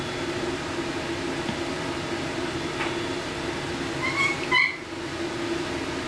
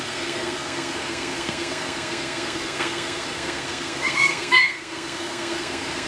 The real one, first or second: first